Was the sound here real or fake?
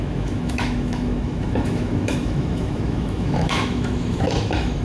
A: fake